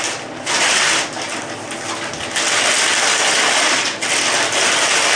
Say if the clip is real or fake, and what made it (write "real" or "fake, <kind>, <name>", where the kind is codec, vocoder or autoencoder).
real